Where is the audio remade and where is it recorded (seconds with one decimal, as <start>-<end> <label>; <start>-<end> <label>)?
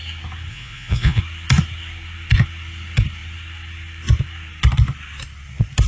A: 0.0-0.5 recorded; 0.5-1.2 remade; 1.2-5.9 recorded